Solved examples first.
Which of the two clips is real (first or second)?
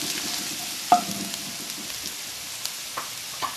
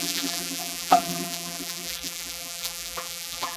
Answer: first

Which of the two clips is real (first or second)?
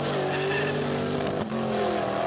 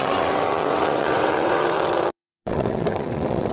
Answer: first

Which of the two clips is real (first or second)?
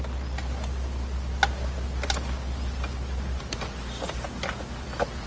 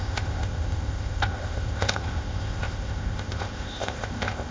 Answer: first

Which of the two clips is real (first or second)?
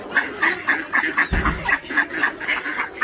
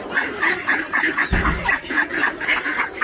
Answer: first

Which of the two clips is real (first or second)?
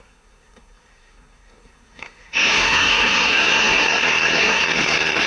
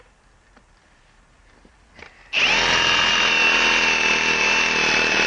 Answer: second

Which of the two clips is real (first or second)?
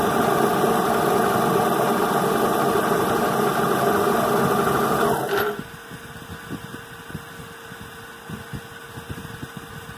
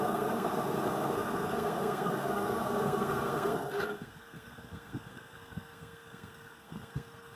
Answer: first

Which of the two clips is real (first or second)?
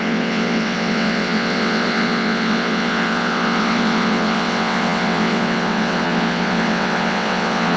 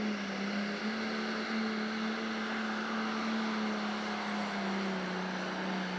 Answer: second